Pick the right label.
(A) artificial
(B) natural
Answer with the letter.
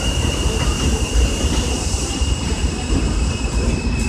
A